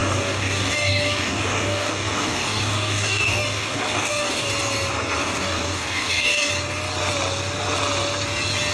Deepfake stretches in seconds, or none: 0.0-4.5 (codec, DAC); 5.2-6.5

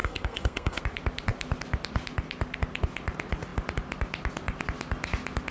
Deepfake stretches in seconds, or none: 0.0-0.8 (codec, SNAC)

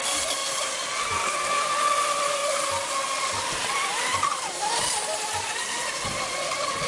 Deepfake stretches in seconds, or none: 0.0-0.4 (vocoder, BigVGAN v2); 1.0-2.4; 3.2-6.9

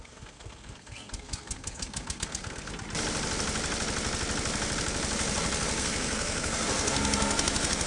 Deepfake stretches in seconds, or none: 0.0-2.7 (codec, SNAC); 5.8-7.9

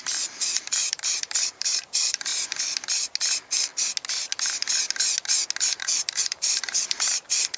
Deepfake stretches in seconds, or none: 0.0-2.3 (vocoder, BigVGAN v2); 5.8-7.6

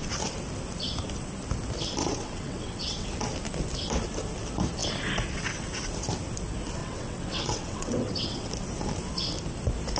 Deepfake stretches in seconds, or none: 2.0-3.1 (vocoder, WaveNeXt); 6.8-8.5